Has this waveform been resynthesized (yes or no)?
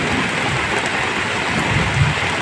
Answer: no